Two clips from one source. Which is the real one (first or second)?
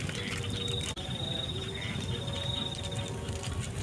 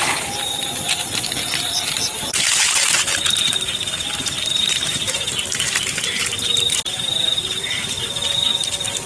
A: first